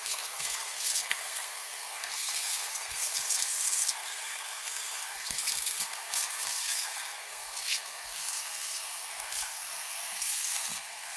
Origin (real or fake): fake